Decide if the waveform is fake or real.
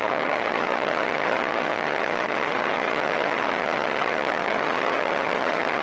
fake